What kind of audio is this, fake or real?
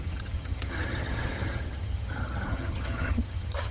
fake